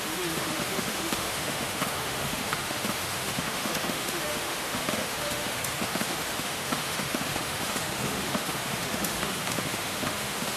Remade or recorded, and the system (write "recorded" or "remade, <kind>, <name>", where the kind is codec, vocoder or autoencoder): remade, autoencoder, DAC-VAE